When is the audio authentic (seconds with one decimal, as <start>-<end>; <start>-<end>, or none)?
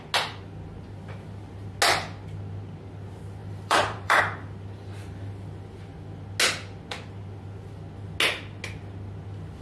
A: 0.0-3.4; 4.2-9.6